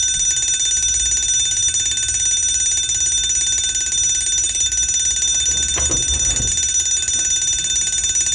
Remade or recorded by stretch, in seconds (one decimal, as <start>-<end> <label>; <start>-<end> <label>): 0.0-8.3 recorded

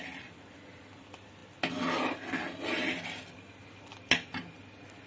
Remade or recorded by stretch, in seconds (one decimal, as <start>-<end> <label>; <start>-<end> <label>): 0.0-5.1 recorded

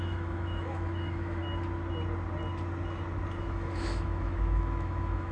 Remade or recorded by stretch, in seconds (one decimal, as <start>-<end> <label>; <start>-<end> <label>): 0.0-1.4 remade; 1.4-3.4 recorded; 3.4-5.3 remade

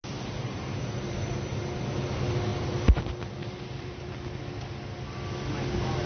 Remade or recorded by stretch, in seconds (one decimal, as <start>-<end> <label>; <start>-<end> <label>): 0.0-0.4 recorded; 0.4-1.5 remade; 1.5-2.5 recorded; 2.5-3.0 remade; 3.0-3.4 recorded; 3.4-4.1 remade; 4.1-6.1 recorded